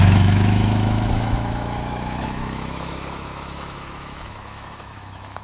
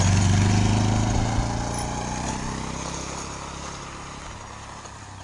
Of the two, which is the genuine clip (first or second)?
second